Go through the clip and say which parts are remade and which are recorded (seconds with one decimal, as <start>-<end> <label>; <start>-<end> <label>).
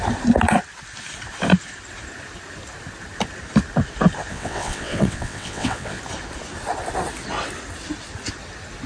0.0-4.3 recorded; 4.3-6.0 remade; 6.0-8.9 recorded